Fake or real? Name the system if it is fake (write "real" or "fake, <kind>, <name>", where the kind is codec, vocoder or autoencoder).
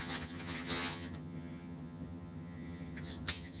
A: fake, vocoder, HiFi-GAN